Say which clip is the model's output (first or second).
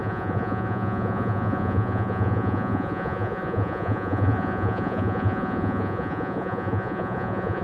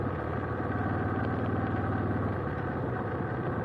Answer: first